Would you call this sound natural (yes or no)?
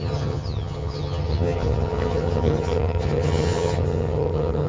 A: no